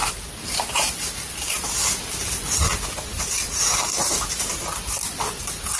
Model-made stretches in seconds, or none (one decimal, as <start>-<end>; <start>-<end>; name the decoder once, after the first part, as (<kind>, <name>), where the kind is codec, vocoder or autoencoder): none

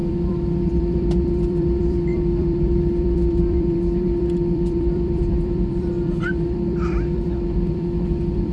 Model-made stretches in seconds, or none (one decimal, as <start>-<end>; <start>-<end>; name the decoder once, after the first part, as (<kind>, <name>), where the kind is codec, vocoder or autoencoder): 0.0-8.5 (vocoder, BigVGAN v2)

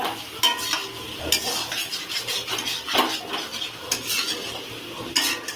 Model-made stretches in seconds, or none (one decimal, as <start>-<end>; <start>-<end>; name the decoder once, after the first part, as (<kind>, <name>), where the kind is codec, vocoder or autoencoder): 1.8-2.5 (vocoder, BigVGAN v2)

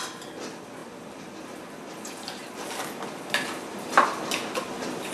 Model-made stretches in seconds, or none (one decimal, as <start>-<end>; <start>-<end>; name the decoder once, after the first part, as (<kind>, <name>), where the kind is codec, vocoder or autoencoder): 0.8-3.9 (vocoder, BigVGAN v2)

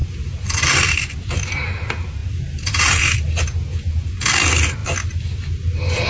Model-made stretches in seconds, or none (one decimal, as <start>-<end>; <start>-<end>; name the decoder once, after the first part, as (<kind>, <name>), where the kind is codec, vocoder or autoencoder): 0.0-0.8 (vocoder, BigVGAN v2); 2.2-3.4